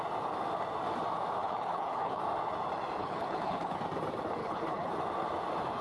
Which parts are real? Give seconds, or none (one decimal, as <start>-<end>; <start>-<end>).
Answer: 0.0-1.4; 2.2-3.0; 3.8-4.4; 4.9-5.8